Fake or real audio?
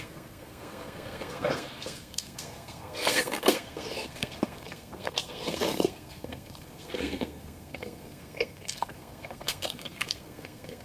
fake